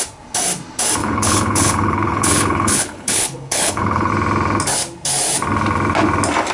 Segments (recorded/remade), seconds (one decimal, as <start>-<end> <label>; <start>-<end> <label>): 0.0-1.0 recorded; 1.0-4.1 remade; 4.1-6.5 recorded